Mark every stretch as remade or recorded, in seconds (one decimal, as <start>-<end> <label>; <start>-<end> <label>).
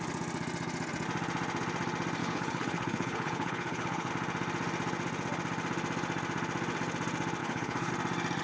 0.0-2.2 recorded; 2.2-4.1 remade; 4.1-7.4 recorded; 7.4-7.9 remade; 7.9-8.4 recorded